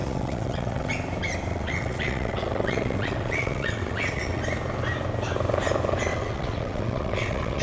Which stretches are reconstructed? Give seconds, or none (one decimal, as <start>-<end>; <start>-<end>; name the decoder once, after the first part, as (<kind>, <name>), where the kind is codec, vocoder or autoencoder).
0.0-0.9 (vocoder, WaveNeXt); 1.5-4.4; 6.1-7.6